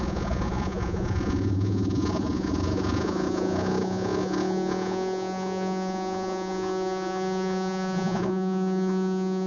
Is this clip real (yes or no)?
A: no